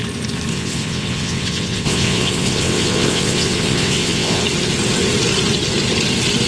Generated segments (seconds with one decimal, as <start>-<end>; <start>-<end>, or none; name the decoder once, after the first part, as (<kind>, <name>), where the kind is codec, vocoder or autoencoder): 0.5-4.4 (vocoder, WaveNeXt)